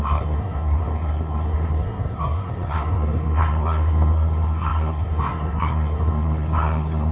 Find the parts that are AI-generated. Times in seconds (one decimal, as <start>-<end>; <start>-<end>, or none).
0.0-7.1